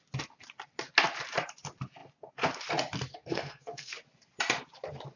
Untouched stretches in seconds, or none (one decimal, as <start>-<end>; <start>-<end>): 0.0-3.1; 3.9-5.2